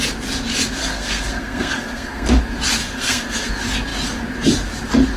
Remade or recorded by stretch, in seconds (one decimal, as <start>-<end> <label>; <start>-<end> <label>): 0.0-0.8 recorded; 0.8-2.4 remade; 2.4-2.8 recorded; 2.8-3.5 remade; 3.5-5.2 recorded